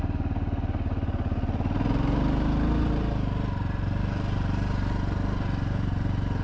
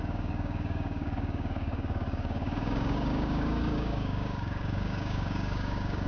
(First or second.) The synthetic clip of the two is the second